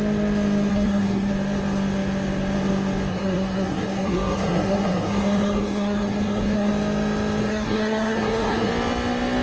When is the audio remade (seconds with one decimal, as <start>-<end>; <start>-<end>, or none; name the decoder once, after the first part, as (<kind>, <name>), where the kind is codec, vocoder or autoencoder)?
0.7-1.3 (codec, SNAC); 3.1-6.7; 7.4-8.7